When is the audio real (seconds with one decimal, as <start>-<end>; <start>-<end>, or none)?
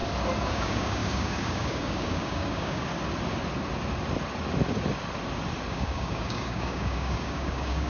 0.0-0.5; 2.9-5.7